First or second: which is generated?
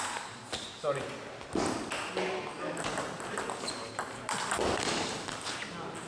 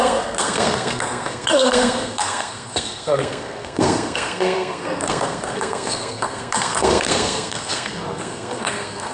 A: second